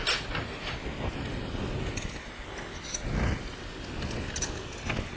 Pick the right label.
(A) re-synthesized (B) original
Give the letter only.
B